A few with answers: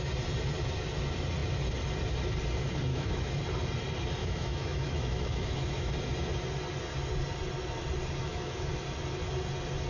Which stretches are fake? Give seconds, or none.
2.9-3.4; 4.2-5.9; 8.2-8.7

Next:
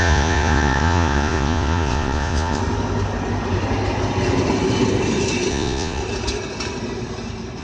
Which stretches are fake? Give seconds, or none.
0.0-2.6; 5.5-6.0

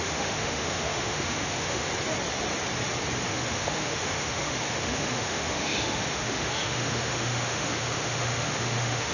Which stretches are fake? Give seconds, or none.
0.0-1.9; 3.3-9.1

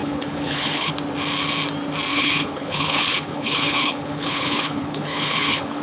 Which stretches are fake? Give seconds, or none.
0.0-0.9; 2.1-5.8

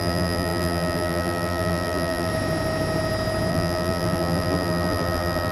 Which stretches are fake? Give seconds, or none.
0.0-2.3; 3.5-5.5

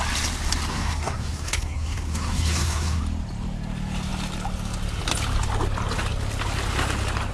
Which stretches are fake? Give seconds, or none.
0.7-3.0